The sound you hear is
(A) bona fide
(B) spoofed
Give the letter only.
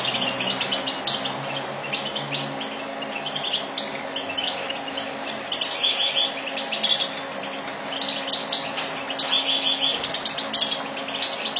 A